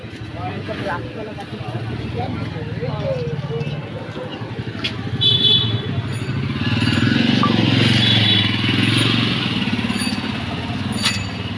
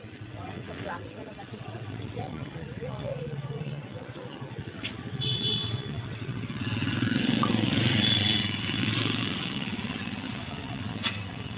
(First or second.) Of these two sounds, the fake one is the second